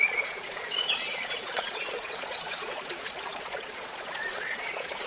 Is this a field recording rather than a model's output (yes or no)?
no